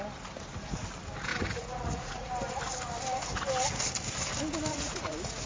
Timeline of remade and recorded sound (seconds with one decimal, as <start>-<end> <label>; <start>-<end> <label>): 0.0-1.3 recorded; 1.3-2.3 remade; 2.3-4.7 recorded; 4.7-5.5 remade